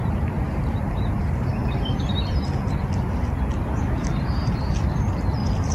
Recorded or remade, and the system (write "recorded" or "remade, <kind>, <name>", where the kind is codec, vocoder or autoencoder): recorded